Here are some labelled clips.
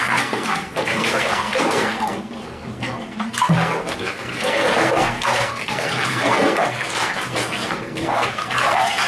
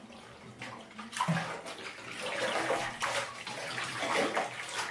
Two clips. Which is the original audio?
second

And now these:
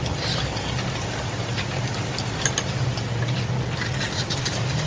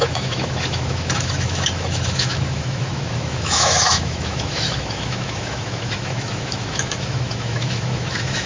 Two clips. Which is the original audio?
first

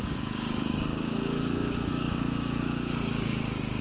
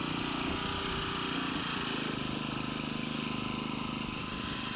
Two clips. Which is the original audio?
second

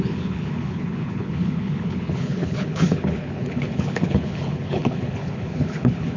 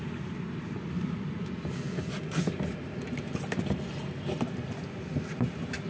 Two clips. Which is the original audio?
second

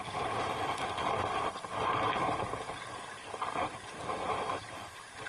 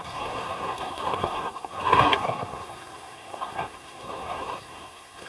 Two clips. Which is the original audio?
first